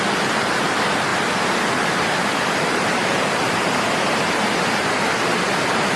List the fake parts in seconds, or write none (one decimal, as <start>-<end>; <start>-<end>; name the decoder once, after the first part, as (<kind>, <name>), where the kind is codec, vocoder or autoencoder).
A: 1.1-4.7 (vocoder, BigVGAN v2)